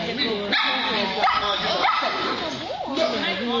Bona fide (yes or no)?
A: yes